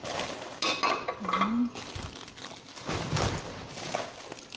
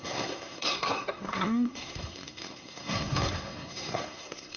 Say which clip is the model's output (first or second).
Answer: second